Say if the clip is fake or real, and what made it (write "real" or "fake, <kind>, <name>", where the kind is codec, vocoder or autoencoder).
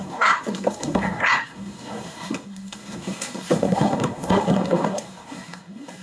fake, codec, SNAC